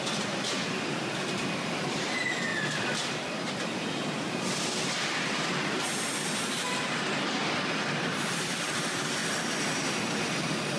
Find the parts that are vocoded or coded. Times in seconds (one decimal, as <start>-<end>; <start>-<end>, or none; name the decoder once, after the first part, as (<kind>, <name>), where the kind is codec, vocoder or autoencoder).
0.0-9.2 (vocoder, BigVGAN v2); 10.2-10.8